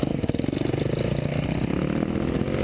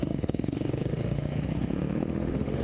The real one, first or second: first